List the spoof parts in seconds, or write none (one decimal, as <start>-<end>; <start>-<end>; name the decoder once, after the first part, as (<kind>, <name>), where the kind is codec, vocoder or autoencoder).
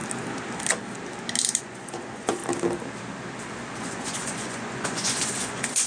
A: 1.6-2.4 (vocoder, Vocos); 3.8-5.9